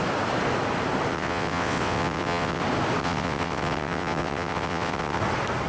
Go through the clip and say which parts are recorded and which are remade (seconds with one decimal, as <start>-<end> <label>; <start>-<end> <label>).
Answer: 0.0-1.1 recorded; 1.1-2.6 remade; 2.6-3.0 recorded; 3.0-5.2 remade; 5.2-5.7 recorded